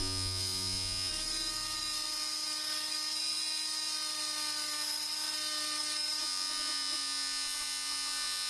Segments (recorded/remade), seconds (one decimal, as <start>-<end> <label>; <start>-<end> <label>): 0.0-1.1 remade; 1.1-6.2 recorded; 6.2-8.5 remade

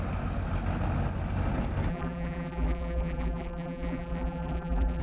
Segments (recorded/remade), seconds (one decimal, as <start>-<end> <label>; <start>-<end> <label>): 0.0-1.9 recorded; 1.9-5.0 remade

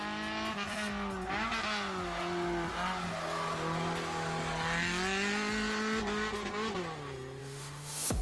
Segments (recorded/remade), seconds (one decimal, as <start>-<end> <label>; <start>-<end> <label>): 0.0-7.4 recorded; 7.4-8.2 remade

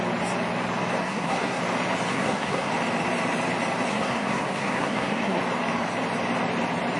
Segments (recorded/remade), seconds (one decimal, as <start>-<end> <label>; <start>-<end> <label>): 0.0-1.0 recorded; 1.0-1.6 remade; 1.6-2.1 recorded; 2.1-2.7 remade; 2.7-3.9 recorded; 3.9-5.4 remade; 5.4-7.0 recorded

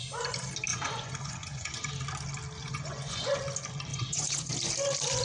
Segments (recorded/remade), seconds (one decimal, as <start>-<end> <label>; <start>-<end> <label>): 0.0-0.7 recorded; 0.7-1.9 remade; 1.9-2.6 recorded; 2.6-3.4 remade; 3.4-3.9 recorded; 3.9-4.5 remade; 4.5-5.2 recorded

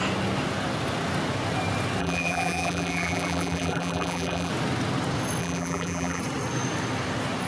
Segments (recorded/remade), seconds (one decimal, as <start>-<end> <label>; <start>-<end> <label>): 0.0-2.0 recorded; 2.0-4.5 remade; 4.5-5.4 recorded; 5.4-6.2 remade; 6.2-7.5 recorded